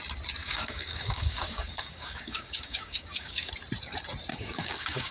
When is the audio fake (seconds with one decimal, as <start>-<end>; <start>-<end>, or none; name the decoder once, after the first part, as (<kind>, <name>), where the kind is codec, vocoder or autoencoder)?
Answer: 0.4-3.5 (codec, DAC); 4.3-5.1